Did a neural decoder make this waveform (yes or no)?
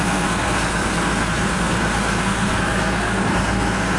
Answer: yes